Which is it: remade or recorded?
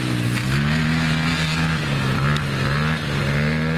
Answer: recorded